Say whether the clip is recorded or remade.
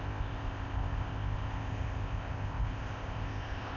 remade